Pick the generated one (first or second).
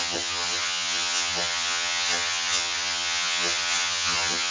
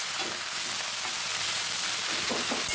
first